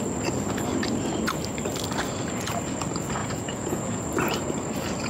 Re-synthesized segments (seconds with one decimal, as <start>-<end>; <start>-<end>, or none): 3.2-4.0